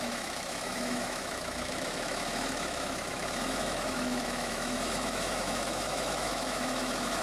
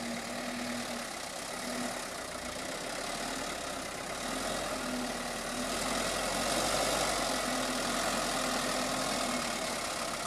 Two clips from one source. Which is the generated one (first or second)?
first